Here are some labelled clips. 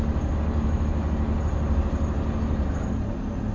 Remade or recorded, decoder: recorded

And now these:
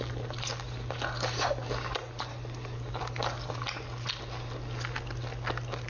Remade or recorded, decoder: recorded